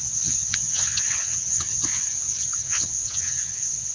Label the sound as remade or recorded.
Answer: remade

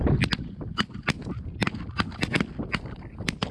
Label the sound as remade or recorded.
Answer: recorded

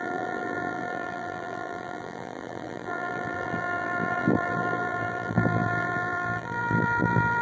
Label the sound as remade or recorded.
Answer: remade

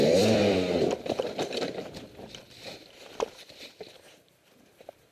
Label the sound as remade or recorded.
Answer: remade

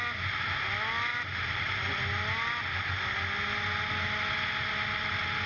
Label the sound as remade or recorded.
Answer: recorded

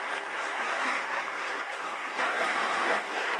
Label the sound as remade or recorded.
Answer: remade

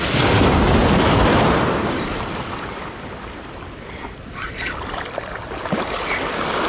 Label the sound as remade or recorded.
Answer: recorded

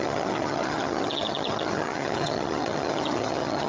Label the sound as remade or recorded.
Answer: remade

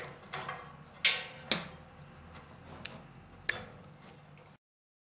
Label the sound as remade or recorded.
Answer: recorded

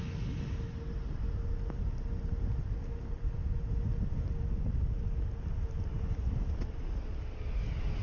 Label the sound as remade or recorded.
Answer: recorded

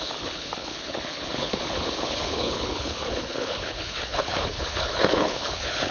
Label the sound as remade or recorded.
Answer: remade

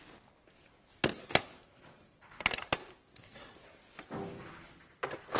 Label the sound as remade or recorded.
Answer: recorded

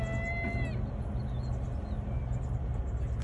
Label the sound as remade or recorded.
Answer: recorded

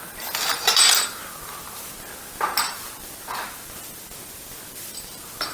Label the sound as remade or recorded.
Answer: recorded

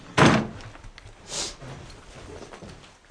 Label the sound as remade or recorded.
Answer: recorded